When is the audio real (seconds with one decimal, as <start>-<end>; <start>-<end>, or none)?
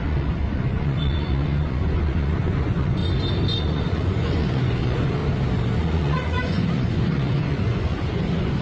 3.0-3.6; 5.2-5.8